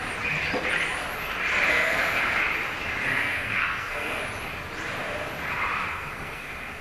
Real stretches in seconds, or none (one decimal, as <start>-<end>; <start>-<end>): 0.0-1.7; 2.4-3.1; 4.2-5.9